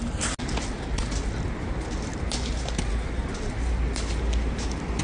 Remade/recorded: recorded